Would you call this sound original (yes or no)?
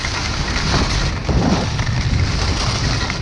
yes